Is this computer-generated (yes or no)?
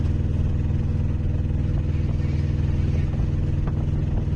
no